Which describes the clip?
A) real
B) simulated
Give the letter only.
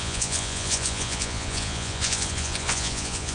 B